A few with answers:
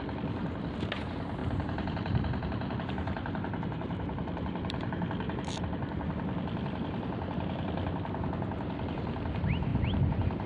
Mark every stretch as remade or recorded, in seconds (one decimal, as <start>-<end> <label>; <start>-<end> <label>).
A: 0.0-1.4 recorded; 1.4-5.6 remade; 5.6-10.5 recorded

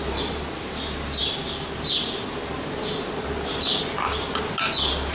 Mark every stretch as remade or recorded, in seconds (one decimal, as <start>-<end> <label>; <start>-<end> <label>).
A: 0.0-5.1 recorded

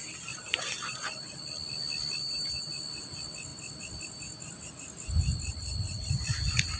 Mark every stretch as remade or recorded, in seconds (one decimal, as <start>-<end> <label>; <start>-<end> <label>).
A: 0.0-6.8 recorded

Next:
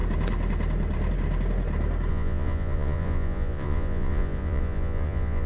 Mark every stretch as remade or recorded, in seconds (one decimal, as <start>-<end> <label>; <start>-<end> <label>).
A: 0.0-2.1 recorded; 2.1-5.5 remade

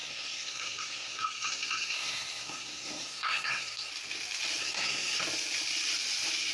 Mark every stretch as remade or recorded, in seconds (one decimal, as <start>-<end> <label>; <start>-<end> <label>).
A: 0.0-3.9 remade; 3.9-4.6 recorded; 4.6-5.2 remade; 5.2-6.5 recorded